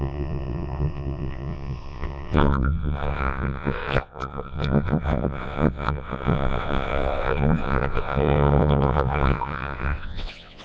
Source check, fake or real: fake